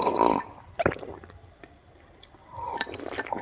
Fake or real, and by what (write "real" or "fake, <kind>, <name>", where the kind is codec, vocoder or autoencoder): fake, vocoder, BigVGAN v2